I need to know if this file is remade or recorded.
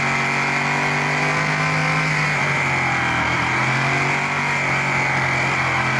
recorded